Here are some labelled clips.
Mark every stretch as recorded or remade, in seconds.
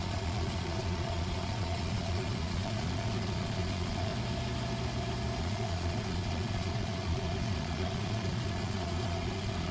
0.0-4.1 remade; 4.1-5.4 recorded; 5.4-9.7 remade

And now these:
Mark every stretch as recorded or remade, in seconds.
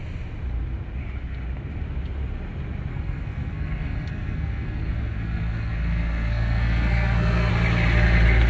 0.0-2.9 recorded; 2.9-7.5 remade; 7.5-8.5 recorded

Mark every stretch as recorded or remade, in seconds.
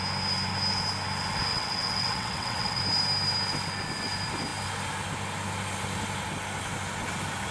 0.0-1.5 recorded; 1.5-2.8 remade; 2.8-7.5 recorded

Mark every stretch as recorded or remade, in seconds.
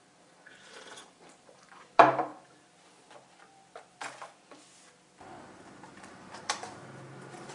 0.0-2.3 remade; 2.3-5.9 recorded; 5.9-6.8 remade; 6.8-7.5 recorded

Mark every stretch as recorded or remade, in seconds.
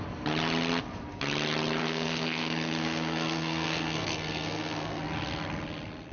0.0-1.8 recorded; 1.8-5.0 remade; 5.0-6.1 recorded